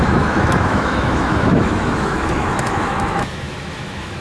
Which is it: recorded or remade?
remade